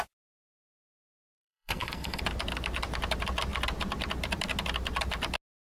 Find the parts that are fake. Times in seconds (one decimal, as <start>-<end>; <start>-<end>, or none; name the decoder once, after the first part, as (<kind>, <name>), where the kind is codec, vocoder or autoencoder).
1.0-2.2 (codec, SNAC)